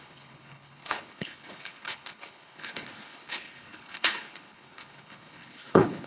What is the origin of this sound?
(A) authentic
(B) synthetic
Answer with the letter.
B